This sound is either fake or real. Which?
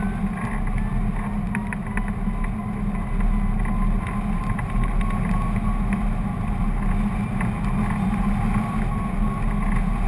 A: real